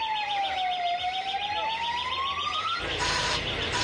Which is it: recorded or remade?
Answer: remade